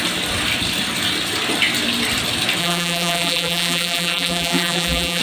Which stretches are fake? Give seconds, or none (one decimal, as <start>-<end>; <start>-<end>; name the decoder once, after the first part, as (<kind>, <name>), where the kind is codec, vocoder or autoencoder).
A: 2.6-5.2 (vocoder, BigVGAN v2)